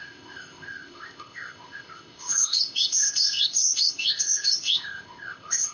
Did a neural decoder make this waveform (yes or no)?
yes